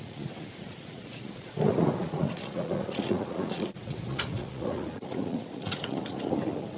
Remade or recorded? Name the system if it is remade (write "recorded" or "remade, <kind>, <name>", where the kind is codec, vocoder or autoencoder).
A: remade, vocoder, Vocos